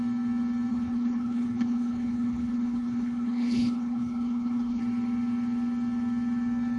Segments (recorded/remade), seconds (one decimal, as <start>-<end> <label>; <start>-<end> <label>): 0.0-0.7 recorded; 0.7-4.8 remade; 4.8-6.8 recorded